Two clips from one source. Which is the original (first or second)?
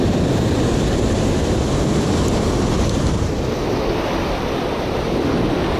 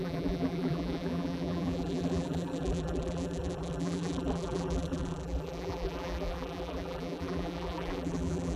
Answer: first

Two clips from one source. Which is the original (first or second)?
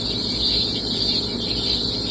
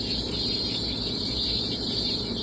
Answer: first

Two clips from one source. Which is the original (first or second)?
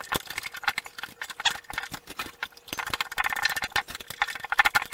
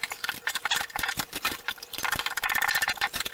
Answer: first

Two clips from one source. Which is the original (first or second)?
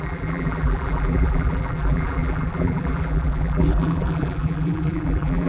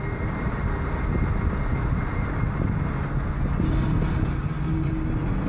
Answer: second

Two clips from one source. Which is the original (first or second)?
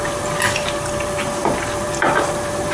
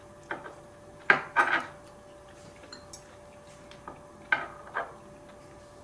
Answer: second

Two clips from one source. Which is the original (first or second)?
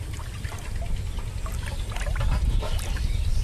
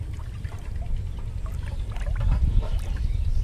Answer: first